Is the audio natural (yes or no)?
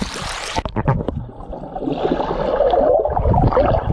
yes